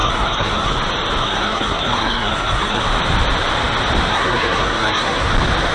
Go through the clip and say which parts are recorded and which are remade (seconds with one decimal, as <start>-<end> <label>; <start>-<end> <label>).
0.0-0.7 remade; 0.7-1.2 recorded; 1.2-2.8 remade; 2.8-4.1 recorded; 4.1-5.3 remade; 5.3-5.7 recorded